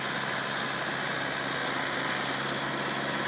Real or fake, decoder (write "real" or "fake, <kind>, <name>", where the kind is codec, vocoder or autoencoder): real